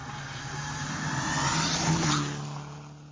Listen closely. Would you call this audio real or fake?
real